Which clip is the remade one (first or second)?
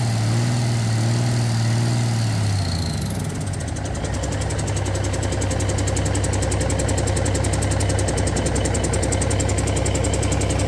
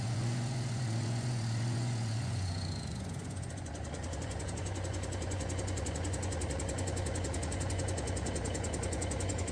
second